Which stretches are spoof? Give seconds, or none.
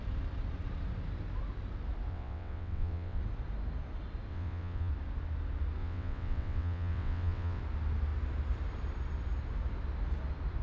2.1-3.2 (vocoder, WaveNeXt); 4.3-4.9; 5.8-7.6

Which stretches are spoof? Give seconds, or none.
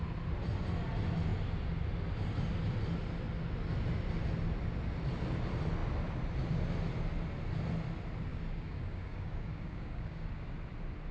8.3-10.3 (codec, DAC)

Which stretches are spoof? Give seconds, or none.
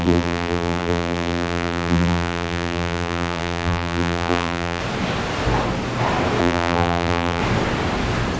0.0-4.8 (vocoder, BigVGAN v2); 6.4-7.4